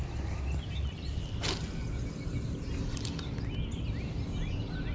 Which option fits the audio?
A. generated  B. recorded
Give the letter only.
B